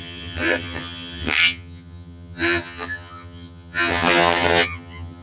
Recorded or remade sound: remade